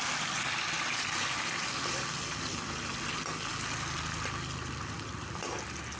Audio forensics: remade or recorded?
recorded